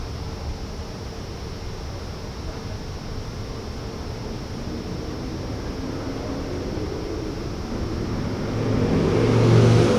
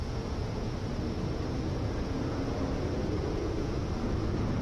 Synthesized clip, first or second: second